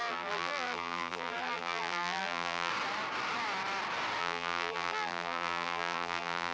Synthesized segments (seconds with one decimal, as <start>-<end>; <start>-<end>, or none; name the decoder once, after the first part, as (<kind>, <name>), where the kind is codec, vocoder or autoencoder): 0.0-2.7 (vocoder, BigVGAN v2); 4.2-6.5